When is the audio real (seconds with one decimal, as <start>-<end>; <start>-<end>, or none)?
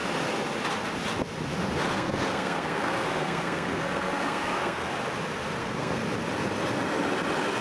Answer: 0.0-1.9; 4.9-5.6; 6.0-7.6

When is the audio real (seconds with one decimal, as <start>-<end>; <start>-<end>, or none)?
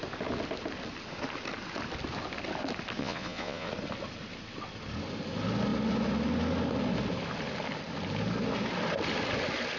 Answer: 0.0-3.0; 3.7-9.8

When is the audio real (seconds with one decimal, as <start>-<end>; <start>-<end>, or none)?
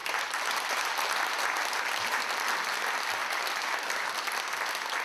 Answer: 0.7-3.2; 4.5-5.0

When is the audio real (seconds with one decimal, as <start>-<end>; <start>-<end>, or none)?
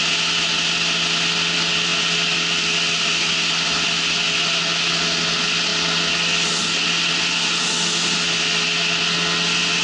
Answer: 0.0-9.8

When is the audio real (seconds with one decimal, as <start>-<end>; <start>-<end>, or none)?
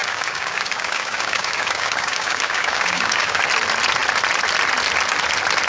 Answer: 3.4-5.7